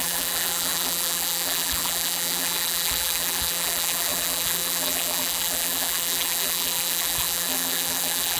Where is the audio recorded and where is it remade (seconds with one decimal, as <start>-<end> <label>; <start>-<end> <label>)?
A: 0.0-8.4 remade